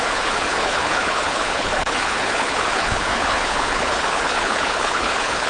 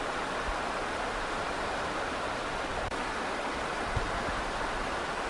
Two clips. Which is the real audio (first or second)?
second